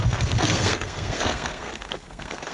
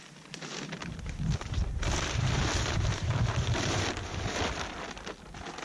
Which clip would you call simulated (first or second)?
first